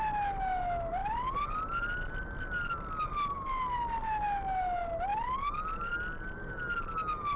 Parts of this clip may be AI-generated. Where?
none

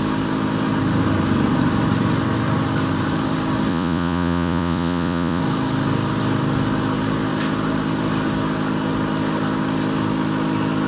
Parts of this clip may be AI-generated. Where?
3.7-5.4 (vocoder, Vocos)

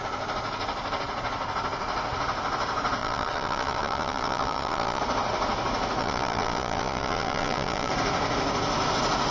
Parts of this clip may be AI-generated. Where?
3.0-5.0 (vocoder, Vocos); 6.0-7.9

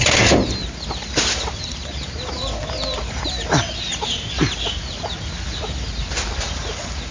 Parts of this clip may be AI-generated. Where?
none

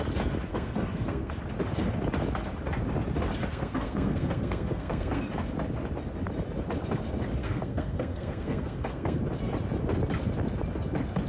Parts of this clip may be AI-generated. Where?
0.5-1.3 (codec, SNAC); 3.5-5.2; 7.4-9.2